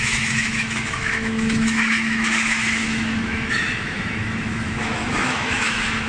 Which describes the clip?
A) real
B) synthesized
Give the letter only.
B